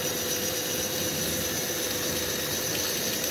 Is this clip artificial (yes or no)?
no